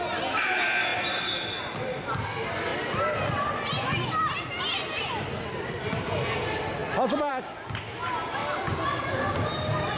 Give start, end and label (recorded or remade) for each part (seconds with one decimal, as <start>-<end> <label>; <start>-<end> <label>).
0.0-10.0 recorded